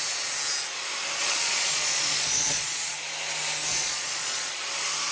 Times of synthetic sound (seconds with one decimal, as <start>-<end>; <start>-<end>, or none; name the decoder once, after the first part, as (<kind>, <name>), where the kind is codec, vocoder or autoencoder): 1.2-2.9 (vocoder, Vocos); 3.7-4.6